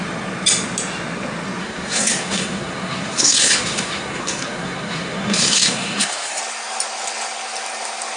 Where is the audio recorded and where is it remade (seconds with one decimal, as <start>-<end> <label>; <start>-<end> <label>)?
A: 0.0-1.6 recorded; 1.6-6.4 remade; 6.4-8.2 recorded